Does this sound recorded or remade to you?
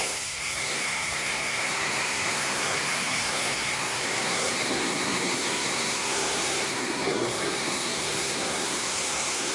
remade